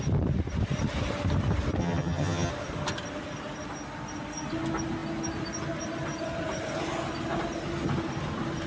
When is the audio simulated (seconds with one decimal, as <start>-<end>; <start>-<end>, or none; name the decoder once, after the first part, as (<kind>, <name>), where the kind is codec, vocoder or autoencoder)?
1.8-2.5 (vocoder, HiFi-GAN)

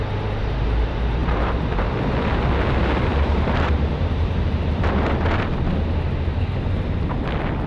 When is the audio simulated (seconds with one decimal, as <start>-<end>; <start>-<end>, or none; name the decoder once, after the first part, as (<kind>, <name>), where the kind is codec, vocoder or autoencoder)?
3.1-5.5 (vocoder, BigVGAN v2)

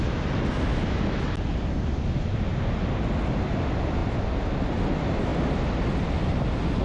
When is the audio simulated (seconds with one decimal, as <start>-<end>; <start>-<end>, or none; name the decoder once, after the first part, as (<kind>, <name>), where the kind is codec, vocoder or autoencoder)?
none

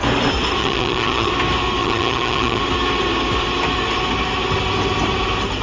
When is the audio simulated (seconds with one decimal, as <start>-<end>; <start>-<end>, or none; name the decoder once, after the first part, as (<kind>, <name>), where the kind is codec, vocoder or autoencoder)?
0.6-1.3 (vocoder, HiFi-GAN); 1.8-2.6

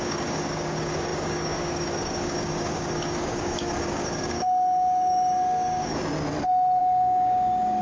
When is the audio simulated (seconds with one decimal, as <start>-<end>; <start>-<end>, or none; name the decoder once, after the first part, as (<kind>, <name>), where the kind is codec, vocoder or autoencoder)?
0.0-5.9 (codec, DAC); 6.8-7.8

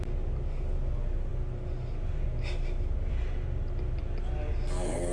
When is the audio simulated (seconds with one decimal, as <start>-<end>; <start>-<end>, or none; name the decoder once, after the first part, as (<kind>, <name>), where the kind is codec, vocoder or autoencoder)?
none

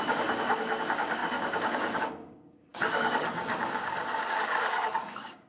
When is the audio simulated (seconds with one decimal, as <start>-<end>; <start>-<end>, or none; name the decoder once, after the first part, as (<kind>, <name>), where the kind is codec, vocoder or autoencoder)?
0.0-5.5 (codec, DAC)

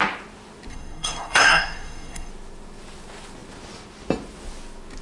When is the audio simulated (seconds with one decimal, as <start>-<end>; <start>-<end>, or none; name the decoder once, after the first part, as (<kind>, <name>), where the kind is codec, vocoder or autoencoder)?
0.7-2.3 (codec, SNAC)